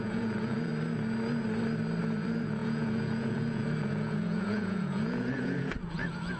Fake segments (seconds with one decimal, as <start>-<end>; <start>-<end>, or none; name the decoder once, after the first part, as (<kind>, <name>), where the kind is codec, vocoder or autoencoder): 0.0-0.7 (vocoder, Vocos); 2.0-6.4